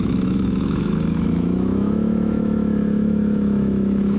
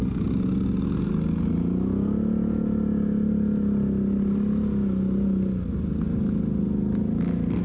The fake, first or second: first